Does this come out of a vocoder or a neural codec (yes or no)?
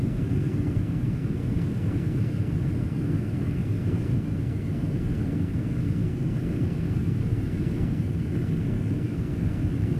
yes